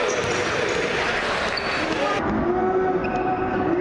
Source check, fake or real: real